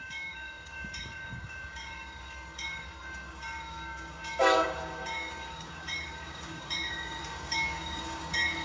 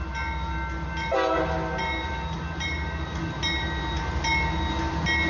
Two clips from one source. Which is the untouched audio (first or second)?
second